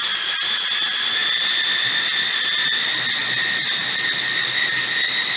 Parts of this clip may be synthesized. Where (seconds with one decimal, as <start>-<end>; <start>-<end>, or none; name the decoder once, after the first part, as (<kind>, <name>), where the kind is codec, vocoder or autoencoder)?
none